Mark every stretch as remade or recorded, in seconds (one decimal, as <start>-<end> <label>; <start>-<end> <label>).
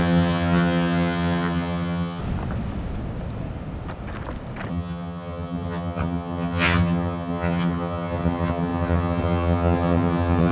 0.0-2.2 remade; 2.2-4.7 recorded; 4.7-10.5 remade